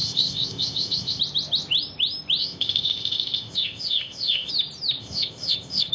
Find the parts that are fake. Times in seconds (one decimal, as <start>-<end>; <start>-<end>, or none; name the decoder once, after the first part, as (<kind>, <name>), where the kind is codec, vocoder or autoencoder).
0.0-1.2 (codec, ZipCodec); 2.4-4.5; 5.0-5.9